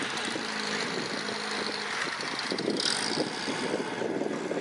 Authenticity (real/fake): real